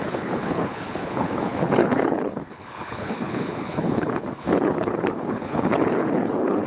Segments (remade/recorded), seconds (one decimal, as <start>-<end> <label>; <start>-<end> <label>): 0.0-6.7 remade